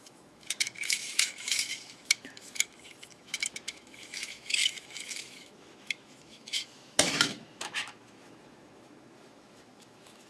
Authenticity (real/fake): fake